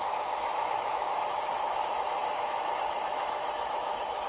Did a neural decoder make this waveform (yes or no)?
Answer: yes